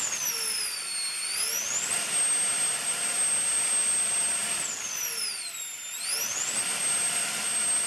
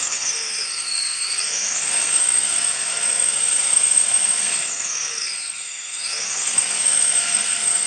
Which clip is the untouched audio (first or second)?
first